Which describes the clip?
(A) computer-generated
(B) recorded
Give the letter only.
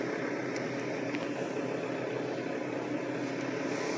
B